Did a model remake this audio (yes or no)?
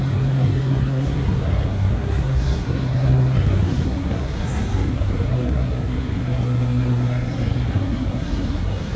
yes